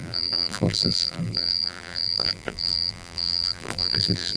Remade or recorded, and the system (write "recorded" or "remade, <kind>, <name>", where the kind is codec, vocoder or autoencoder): remade, vocoder, BigVGAN v2